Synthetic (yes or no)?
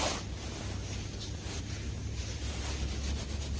no